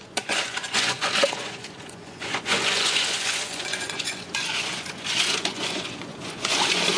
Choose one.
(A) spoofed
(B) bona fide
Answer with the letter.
A